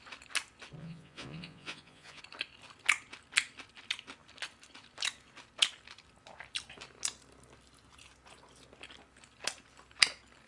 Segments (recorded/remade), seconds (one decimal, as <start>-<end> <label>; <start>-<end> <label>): 0.0-0.8 recorded; 0.8-2.2 remade; 2.2-10.5 recorded